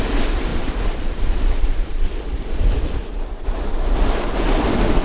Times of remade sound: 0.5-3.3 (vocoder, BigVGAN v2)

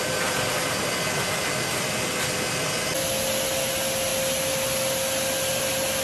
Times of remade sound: none

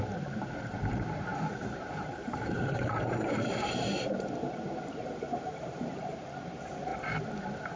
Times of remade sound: 0.0-6.9 (vocoder, BigVGAN v2)

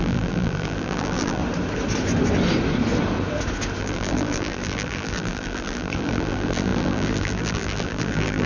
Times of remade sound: 0.0-1.4 (vocoder, BigVGAN v2); 3.8-8.5

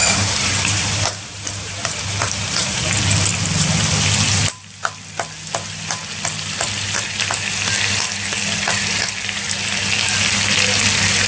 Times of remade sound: 0.0-2.9 (vocoder, BigVGAN v2)